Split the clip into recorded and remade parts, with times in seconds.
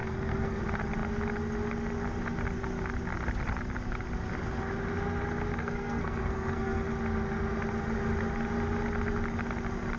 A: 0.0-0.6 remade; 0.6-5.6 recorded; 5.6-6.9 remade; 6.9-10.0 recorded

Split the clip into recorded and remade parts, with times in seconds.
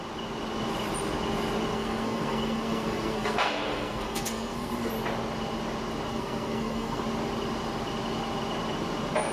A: 0.0-1.7 recorded; 1.7-4.9 remade; 4.9-6.1 recorded; 6.1-7.0 remade; 7.0-9.3 recorded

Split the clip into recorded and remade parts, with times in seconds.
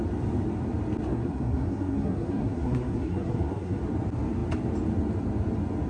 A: 0.0-1.1 recorded; 1.1-3.8 remade; 3.8-5.9 recorded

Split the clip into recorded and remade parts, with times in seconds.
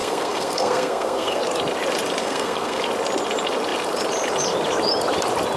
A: 0.0-1.4 remade; 1.4-2.2 recorded; 2.2-2.8 remade; 2.8-5.6 recorded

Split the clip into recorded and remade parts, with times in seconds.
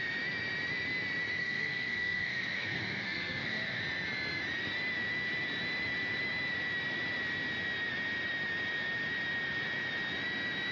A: 0.0-1.4 recorded; 1.4-3.8 remade; 3.8-10.7 recorded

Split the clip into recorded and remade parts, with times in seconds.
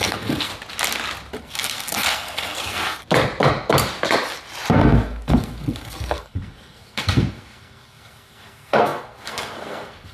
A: 0.0-0.5 remade; 0.5-1.4 recorded; 1.4-3.0 remade; 3.0-4.7 recorded; 4.7-10.1 remade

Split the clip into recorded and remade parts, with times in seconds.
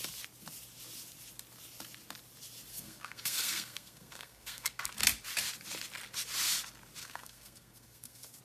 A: 0.0-2.7 recorded; 2.7-4.8 remade; 4.8-7.0 recorded; 7.0-8.4 remade